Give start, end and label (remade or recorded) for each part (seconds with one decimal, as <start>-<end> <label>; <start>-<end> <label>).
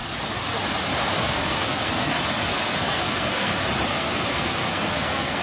0.0-1.2 recorded; 1.2-2.1 remade; 2.1-2.5 recorded; 2.5-3.5 remade; 3.5-3.9 recorded; 3.9-5.4 remade